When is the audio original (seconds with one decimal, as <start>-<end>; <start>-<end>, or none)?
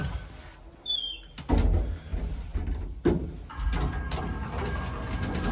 0.0-5.5